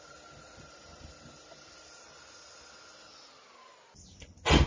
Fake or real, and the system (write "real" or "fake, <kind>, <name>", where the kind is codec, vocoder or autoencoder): real